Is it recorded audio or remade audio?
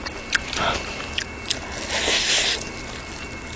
recorded